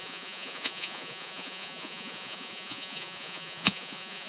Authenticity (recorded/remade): remade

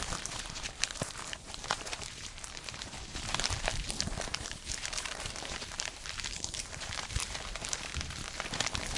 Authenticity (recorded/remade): remade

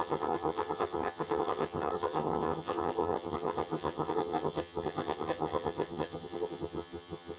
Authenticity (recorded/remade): remade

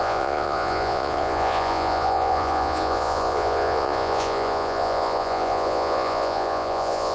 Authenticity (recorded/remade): remade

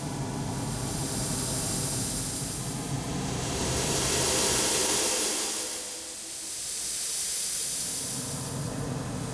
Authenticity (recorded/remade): recorded